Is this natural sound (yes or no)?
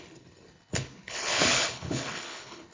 no